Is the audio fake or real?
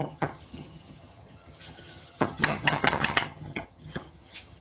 fake